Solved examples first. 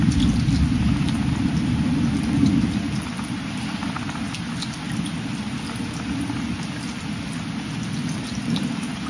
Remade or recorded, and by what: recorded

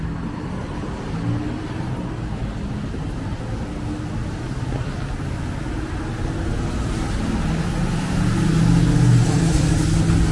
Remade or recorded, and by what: recorded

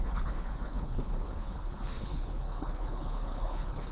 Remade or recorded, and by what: remade, codec, HILCodec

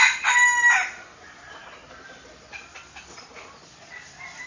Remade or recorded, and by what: recorded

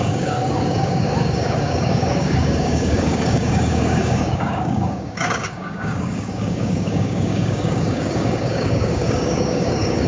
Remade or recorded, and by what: remade, codec, DAC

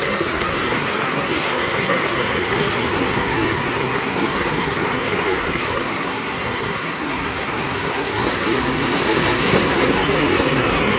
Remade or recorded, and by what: remade, codec, SNAC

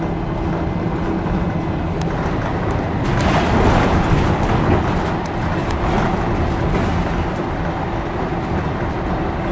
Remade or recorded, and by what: recorded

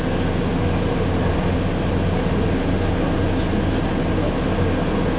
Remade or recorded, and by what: recorded